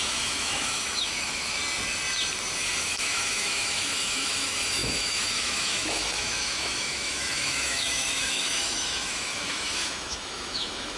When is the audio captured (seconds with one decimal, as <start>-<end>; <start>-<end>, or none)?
1.6-2.8